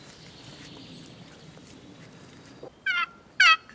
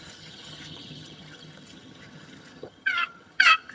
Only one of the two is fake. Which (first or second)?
second